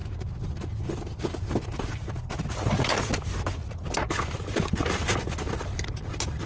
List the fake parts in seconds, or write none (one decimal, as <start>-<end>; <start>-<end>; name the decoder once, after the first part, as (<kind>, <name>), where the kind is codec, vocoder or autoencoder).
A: none